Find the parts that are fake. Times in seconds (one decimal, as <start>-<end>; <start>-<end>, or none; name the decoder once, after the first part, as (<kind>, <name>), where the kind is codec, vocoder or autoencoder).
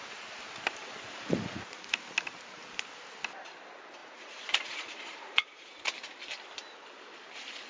0.8-2.0 (vocoder, Vocos); 4.0-5.7